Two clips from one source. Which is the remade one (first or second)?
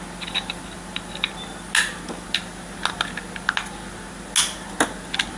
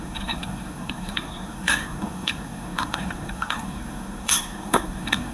second